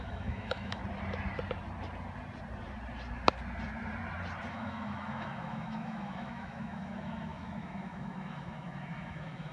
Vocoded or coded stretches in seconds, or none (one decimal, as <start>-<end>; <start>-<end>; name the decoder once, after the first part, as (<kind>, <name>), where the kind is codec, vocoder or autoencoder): 0.0-0.8 (autoencoder, DAC-VAE); 4.5-9.5